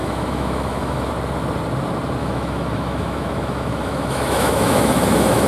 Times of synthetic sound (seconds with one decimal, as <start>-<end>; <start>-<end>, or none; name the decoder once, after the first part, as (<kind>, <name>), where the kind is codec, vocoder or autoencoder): 0.0-1.1 (autoencoder, DAC-VAE); 2.2-5.5